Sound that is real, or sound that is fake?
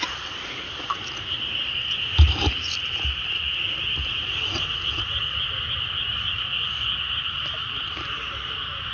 real